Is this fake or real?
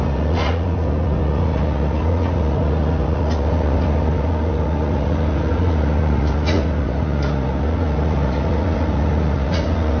fake